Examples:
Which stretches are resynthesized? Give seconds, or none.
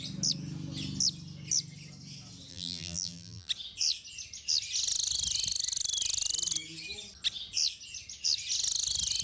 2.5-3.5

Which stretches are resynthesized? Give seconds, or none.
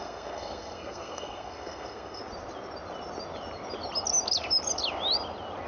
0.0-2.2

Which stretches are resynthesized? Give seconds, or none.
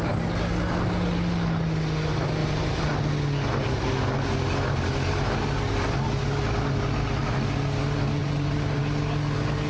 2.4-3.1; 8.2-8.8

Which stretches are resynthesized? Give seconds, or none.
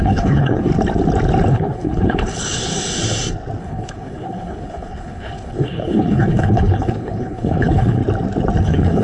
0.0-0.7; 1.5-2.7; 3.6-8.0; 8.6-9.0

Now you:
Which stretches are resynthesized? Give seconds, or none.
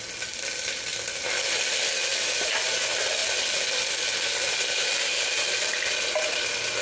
none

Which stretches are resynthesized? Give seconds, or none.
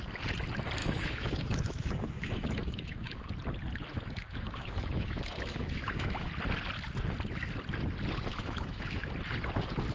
0.8-3.3; 3.9-6.3; 8.3-9.1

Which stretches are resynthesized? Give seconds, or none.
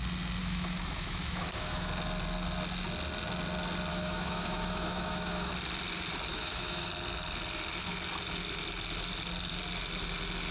0.4-1.9; 3.9-5.5; 6.3-6.9